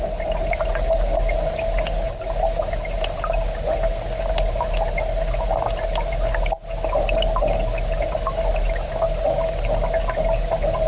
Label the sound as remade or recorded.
recorded